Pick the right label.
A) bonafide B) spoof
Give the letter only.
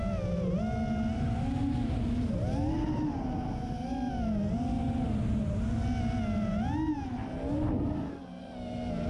A